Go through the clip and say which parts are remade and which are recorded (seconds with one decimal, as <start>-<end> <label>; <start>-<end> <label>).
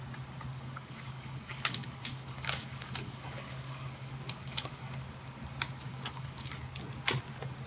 0.0-0.5 recorded; 0.5-4.9 remade; 4.9-5.9 recorded; 5.9-6.5 remade; 6.5-7.7 recorded